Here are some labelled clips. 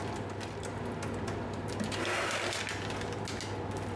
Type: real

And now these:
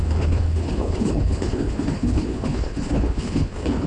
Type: fake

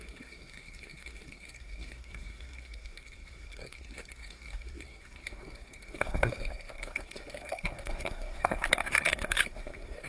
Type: fake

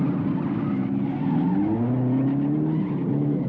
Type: real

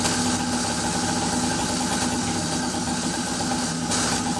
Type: real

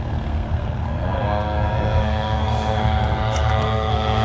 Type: fake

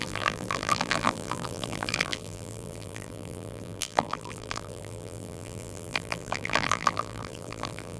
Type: fake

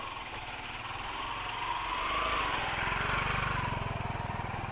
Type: real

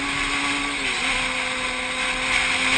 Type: real